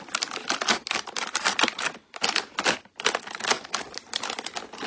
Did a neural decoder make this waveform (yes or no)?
no